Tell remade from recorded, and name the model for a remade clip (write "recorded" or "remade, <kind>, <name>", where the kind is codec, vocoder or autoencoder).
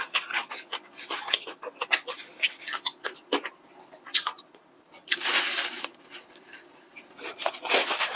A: recorded